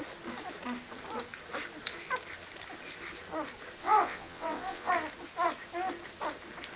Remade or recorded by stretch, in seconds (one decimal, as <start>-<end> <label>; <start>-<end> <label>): 0.0-3.8 recorded; 3.8-4.9 remade; 4.9-6.8 recorded